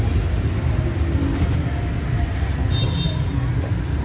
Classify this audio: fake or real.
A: real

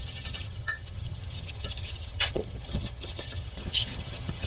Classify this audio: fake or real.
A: fake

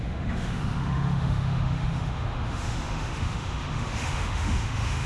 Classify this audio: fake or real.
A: fake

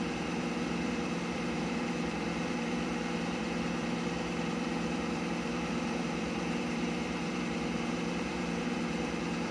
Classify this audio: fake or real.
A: fake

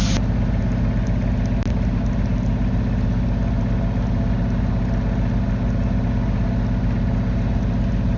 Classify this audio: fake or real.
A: real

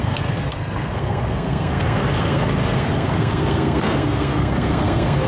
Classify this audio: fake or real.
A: fake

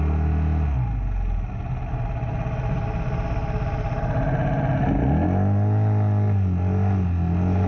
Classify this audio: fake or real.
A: real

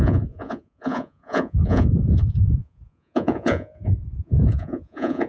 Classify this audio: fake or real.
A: fake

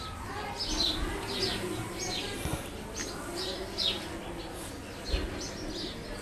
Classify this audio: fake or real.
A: real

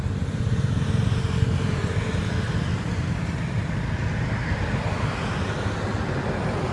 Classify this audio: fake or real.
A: real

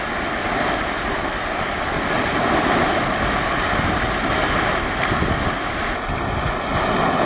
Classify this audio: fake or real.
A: real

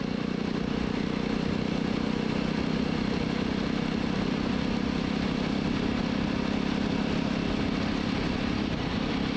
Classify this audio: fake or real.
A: real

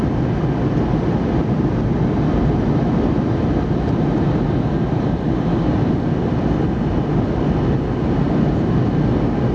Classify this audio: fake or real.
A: real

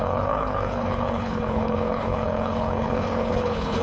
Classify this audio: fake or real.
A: fake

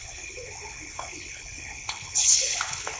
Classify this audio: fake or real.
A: fake